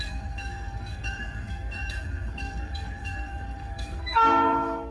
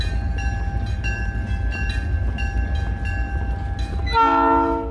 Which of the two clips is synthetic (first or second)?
first